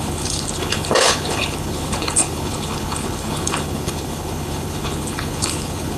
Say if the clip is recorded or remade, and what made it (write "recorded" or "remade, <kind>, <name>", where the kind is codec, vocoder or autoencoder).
remade, codec, HILCodec